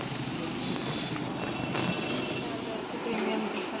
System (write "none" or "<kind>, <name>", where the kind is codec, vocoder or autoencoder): none